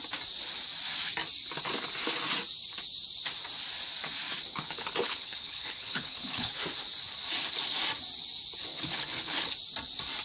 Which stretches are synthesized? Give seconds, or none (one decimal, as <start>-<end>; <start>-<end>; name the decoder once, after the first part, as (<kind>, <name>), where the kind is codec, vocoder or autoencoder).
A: 4.5-6.5 (codec, HILCodec); 8.7-9.5